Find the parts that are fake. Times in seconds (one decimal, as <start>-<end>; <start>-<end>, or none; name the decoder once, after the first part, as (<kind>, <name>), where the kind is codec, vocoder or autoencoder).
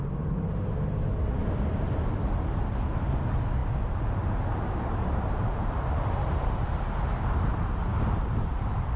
none